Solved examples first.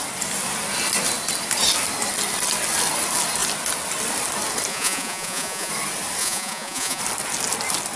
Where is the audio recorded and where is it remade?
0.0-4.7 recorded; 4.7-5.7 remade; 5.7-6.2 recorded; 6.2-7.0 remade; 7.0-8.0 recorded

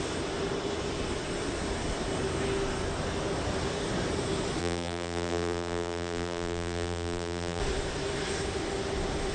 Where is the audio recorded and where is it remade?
0.0-4.6 recorded; 4.6-7.6 remade; 7.6-9.3 recorded

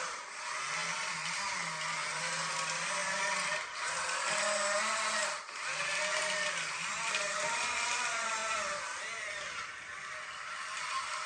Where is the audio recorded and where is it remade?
0.0-11.3 recorded

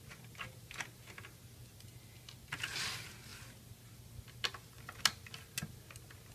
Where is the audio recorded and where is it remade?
0.0-6.3 recorded